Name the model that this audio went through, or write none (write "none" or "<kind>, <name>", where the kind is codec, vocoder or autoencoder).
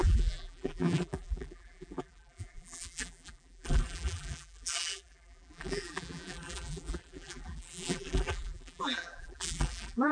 vocoder, BigVGAN v2